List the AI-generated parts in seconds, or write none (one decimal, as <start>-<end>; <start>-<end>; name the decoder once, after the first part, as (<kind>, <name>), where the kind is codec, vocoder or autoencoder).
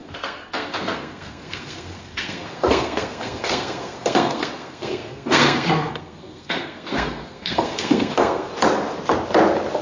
0.0-8.5 (codec, SNAC)